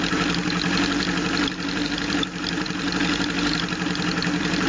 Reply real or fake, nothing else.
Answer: fake